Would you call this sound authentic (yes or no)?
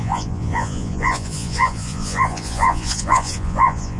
no